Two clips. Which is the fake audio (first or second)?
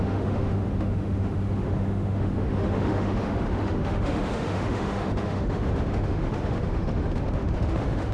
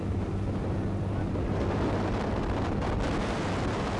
first